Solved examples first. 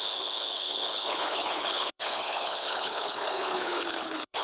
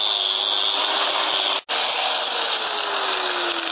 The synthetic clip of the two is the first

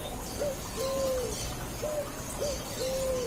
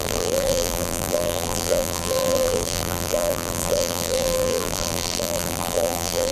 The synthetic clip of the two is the second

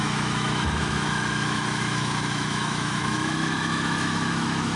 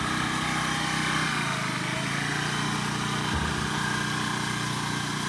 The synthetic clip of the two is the first